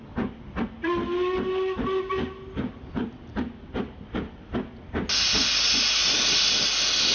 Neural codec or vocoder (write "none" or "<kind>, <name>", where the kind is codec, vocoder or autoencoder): none